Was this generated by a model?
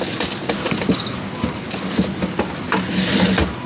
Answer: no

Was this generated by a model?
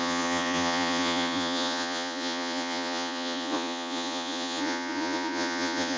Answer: yes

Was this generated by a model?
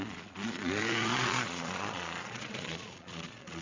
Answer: yes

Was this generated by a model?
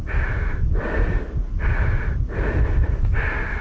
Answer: no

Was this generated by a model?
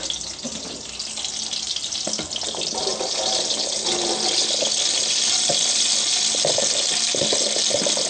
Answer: no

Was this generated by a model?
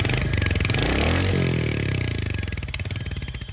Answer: no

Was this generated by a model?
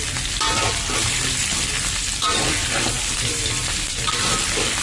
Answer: no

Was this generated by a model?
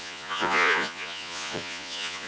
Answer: yes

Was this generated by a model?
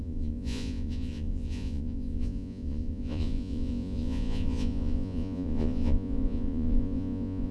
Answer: yes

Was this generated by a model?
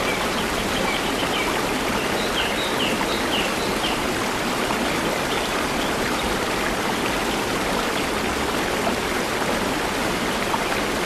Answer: no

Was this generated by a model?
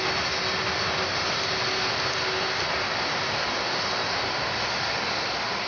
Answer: no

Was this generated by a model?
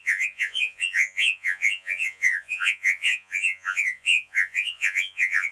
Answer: yes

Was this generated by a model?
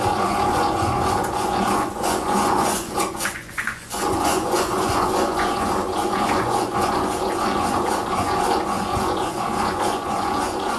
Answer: yes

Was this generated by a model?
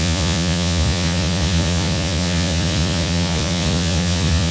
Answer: yes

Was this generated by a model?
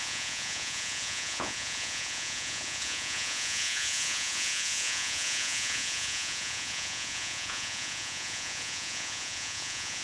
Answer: yes